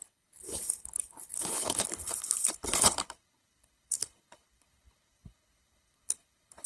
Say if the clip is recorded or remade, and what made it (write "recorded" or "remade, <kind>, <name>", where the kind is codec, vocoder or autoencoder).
remade, codec, HILCodec